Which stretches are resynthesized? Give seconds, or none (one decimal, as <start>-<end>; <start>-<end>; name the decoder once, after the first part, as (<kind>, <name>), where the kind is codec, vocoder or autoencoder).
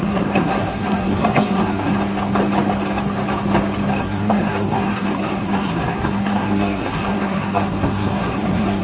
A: 0.0-1.9 (codec, SNAC); 4.0-8.8